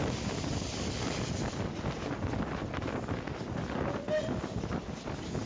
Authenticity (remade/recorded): recorded